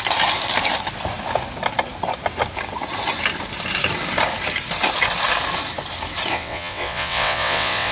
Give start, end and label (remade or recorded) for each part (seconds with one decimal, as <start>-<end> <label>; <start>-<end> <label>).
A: 0.0-6.3 recorded; 6.3-7.9 remade